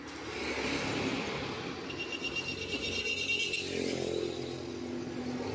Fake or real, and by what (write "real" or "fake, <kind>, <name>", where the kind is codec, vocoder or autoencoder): real